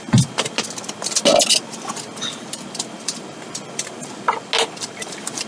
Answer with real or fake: real